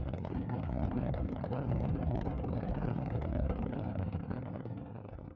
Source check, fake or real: fake